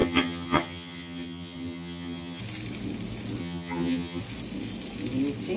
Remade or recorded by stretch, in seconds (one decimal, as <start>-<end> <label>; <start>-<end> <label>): 0.0-2.4 remade; 2.4-3.4 recorded; 3.4-4.2 remade; 4.2-5.6 recorded